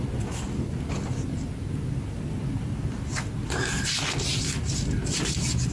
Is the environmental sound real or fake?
real